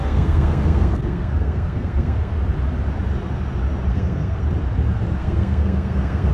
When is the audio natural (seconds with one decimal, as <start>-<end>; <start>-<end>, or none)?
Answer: 2.3-3.9; 4.4-5.2

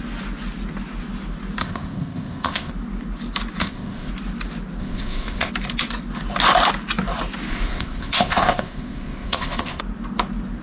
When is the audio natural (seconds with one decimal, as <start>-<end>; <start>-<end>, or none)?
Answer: 0.0-1.6; 2.7-3.6; 4.1-4.8; 5.5-7.5; 9.8-10.6